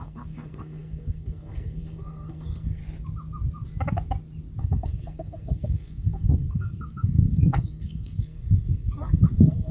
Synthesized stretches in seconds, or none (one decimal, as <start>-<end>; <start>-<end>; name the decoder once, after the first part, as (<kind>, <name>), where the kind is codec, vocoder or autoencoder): 0.0-2.8 (codec, SNAC); 4.6-9.7